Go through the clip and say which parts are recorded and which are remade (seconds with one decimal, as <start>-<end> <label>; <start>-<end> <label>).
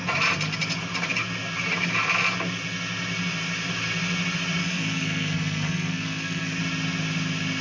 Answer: 0.0-4.6 recorded; 4.6-6.6 remade; 6.6-7.6 recorded